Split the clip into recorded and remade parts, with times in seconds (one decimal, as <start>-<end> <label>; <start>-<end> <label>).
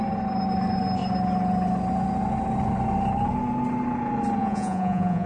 0.0-4.4 recorded; 4.4-5.3 remade